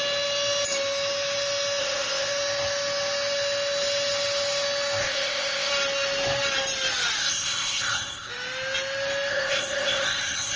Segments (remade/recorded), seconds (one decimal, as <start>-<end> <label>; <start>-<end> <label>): 0.0-1.8 recorded; 1.8-2.3 remade; 2.3-5.0 recorded; 5.0-5.7 remade; 5.7-7.2 recorded; 7.2-8.3 remade; 8.3-9.3 recorded; 9.3-10.6 remade